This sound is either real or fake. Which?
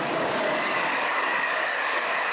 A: fake